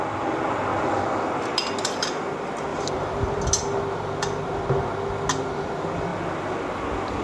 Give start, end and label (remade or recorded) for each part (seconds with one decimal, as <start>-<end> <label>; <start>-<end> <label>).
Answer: 0.0-2.7 recorded; 2.7-3.4 remade; 3.4-7.2 recorded